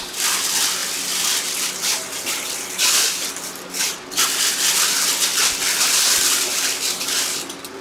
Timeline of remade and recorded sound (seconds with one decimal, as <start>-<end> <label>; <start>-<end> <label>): 0.0-7.8 recorded